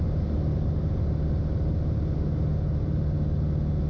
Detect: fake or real real